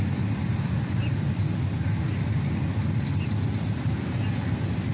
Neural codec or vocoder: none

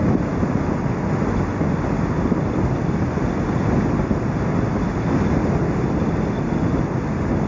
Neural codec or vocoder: none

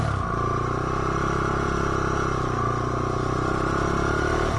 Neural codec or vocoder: none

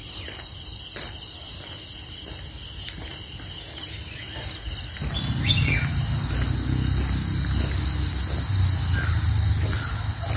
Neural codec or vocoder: none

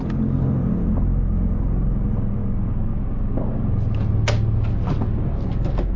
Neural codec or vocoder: none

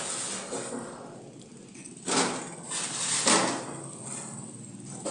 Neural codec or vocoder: none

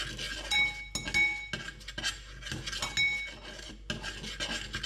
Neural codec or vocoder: none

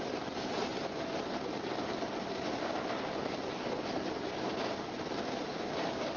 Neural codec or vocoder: none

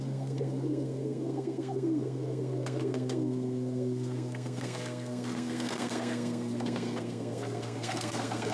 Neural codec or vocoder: codec, SNAC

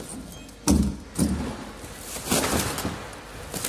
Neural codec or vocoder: none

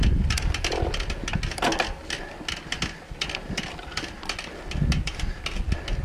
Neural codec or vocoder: none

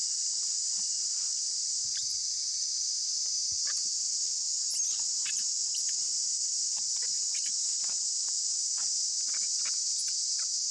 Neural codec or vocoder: none